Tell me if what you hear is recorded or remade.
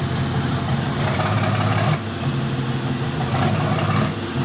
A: recorded